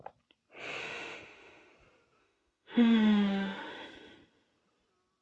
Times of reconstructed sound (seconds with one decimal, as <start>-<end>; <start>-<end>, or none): 0.8-1.7; 2.2-3.7